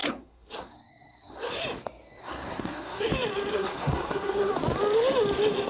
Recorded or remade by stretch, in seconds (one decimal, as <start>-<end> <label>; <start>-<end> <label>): 0.0-1.6 remade; 1.6-2.2 recorded; 2.2-3.1 remade; 3.1-3.5 recorded; 3.5-4.5 remade; 4.5-5.7 recorded

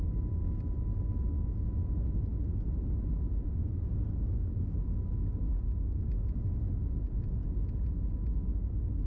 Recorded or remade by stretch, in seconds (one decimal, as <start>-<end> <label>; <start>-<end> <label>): 0.0-9.1 recorded

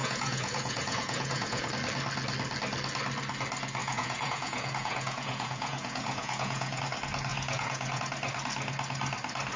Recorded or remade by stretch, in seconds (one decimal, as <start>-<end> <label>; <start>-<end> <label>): 0.0-1.7 remade; 1.7-3.8 recorded; 3.8-6.8 remade; 6.8-7.3 recorded; 7.3-8.0 remade; 8.0-9.6 recorded

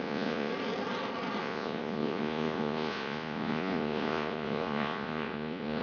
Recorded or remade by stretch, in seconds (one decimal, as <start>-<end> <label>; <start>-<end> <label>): 0.0-0.5 remade; 0.5-1.4 recorded; 1.4-5.8 remade

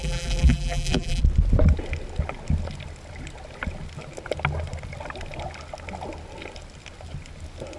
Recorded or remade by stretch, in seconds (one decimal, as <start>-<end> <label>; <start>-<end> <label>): 0.0-1.2 remade; 1.2-7.8 recorded

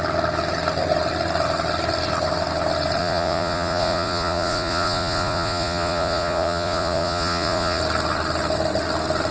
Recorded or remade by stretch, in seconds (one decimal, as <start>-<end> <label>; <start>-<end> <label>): 0.0-3.0 recorded; 3.0-7.8 remade; 7.8-9.3 recorded